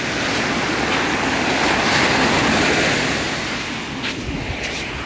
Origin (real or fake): real